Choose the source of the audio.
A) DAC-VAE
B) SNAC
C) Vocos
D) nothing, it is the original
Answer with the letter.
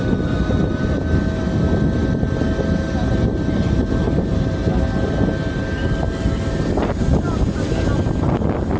D